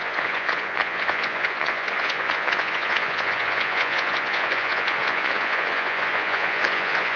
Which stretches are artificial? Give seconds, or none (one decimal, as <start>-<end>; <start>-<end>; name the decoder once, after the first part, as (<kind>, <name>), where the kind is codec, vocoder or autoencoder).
0.0-7.2 (vocoder, Vocos)